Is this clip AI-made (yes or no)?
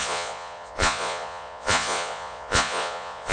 yes